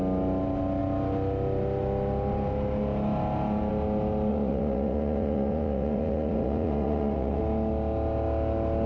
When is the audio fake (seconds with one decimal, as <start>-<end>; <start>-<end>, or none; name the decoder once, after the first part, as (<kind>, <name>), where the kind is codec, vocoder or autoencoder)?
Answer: 4.3-7.4 (vocoder, Vocos)

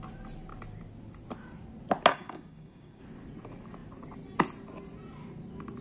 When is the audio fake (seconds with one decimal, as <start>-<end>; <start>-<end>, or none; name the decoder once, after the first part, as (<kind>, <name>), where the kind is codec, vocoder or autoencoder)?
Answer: 2.1-3.0 (codec, DAC)

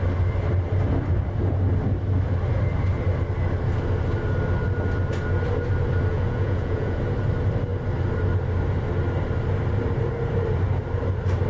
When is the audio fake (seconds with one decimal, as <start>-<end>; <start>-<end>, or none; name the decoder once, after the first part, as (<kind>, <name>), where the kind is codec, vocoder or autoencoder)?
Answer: 6.1-7.0 (vocoder, Vocos)